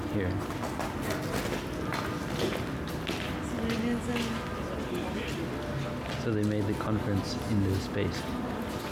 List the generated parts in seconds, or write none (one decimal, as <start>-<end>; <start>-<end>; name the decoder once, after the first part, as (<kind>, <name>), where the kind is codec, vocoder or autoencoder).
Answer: none